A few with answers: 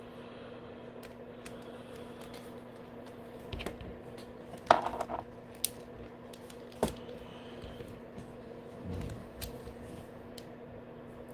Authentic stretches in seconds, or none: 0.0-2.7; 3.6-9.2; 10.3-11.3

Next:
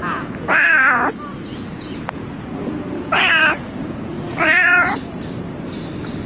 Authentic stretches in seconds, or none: 1.1-1.5; 5.3-6.3

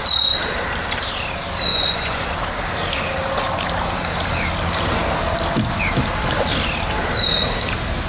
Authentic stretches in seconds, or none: 0.0-1.7; 2.3-8.1

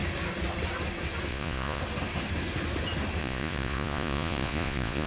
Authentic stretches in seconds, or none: 0.0-1.3; 1.8-3.2

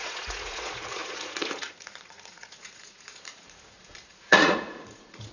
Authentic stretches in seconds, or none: none